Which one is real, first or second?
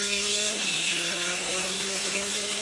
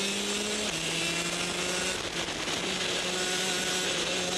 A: second